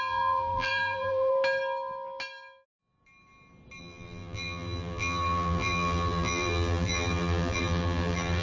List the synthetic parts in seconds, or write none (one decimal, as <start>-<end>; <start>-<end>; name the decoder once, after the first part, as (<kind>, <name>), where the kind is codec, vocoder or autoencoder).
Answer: 0.0-1.3 (vocoder, BigVGAN v2); 3.8-8.4